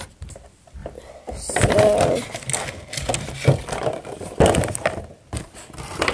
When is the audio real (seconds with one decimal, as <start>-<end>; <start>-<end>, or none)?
0.0-6.1